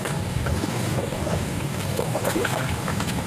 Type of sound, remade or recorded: remade